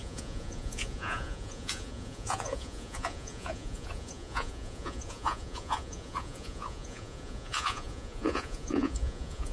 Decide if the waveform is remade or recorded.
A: remade